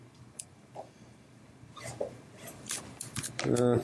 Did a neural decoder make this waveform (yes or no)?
yes